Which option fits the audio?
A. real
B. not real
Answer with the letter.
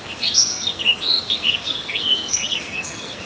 B